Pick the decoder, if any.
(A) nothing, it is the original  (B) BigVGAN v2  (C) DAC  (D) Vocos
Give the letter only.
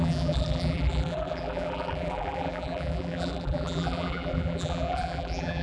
B